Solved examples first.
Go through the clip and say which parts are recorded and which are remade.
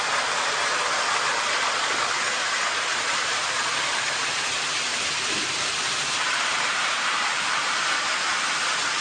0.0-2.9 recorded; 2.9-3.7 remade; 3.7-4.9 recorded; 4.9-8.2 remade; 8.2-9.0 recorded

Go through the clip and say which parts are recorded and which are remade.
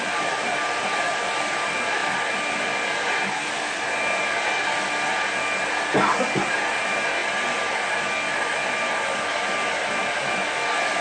0.0-11.0 recorded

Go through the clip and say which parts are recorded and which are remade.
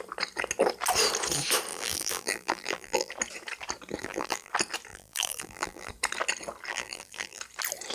0.0-1.7 recorded; 1.7-3.1 remade; 3.1-4.0 recorded; 4.0-4.5 remade; 4.5-4.9 recorded; 4.9-5.9 remade; 5.9-6.7 recorded; 6.7-7.4 remade; 7.4-7.9 recorded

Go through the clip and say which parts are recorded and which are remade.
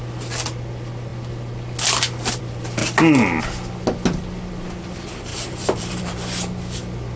0.0-5.3 recorded; 5.3-6.1 remade; 6.1-7.2 recorded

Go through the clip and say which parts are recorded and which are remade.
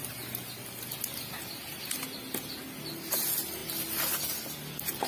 0.0-3.6 recorded; 3.6-4.2 remade; 4.2-5.1 recorded